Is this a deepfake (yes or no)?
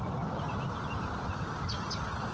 no